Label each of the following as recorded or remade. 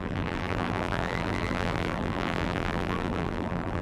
remade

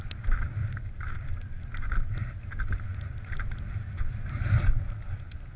recorded